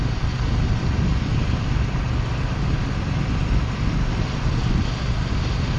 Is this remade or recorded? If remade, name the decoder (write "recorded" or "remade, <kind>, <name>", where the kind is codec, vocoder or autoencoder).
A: remade, vocoder, BigVGAN v2